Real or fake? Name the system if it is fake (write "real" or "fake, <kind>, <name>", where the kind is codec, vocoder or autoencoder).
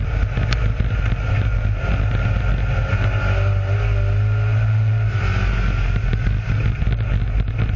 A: real